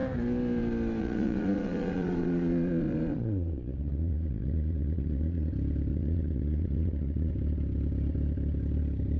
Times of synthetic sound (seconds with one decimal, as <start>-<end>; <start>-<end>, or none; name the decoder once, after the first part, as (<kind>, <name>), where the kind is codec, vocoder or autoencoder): 1.0-5.5 (vocoder, Vocos); 5.9-7.3